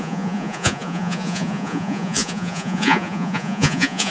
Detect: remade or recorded remade